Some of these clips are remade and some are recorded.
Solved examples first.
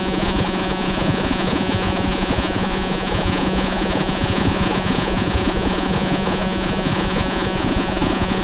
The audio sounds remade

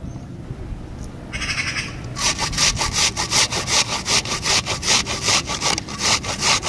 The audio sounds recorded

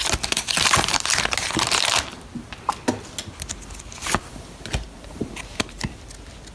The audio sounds recorded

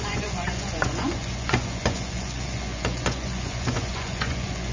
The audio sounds remade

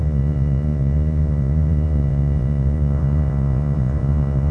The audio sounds remade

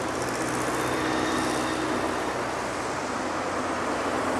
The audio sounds recorded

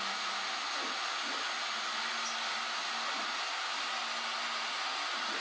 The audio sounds recorded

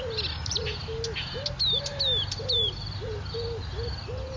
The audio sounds recorded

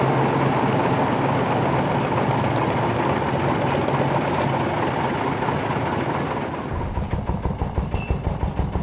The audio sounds recorded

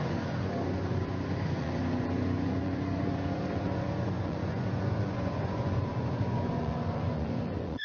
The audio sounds remade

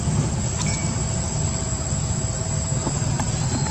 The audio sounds recorded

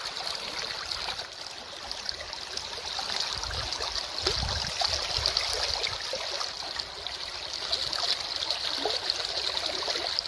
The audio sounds recorded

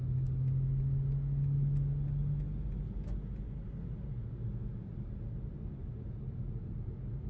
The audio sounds recorded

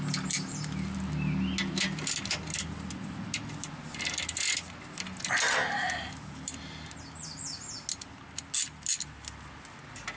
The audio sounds recorded